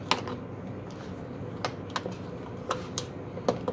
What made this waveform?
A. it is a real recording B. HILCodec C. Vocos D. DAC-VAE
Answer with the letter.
A